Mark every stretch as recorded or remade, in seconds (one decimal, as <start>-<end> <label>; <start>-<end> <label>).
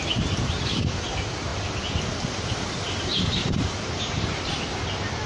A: 0.0-3.1 recorded; 3.1-4.6 remade; 4.6-5.3 recorded